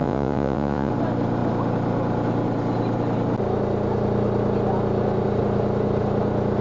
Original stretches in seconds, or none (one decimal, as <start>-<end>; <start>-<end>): 0.9-6.6